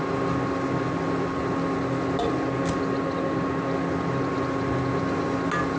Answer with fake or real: real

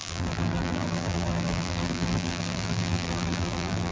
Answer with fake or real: fake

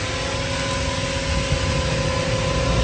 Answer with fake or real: real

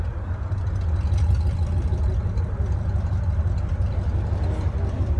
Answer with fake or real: fake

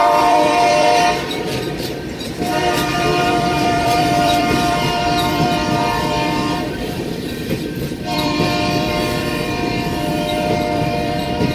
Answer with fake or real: fake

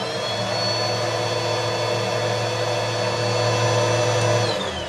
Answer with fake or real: real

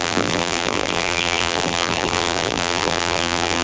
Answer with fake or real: fake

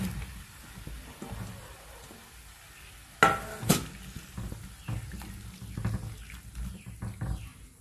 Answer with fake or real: real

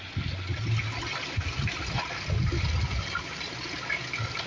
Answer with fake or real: real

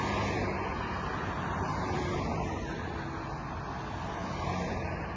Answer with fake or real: real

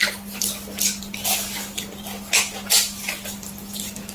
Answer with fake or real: real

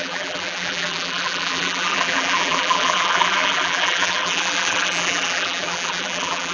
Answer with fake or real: fake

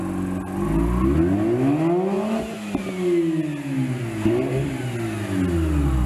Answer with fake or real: real